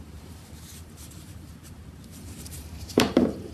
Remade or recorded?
remade